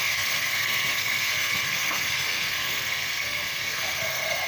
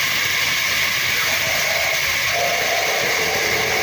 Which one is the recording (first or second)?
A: second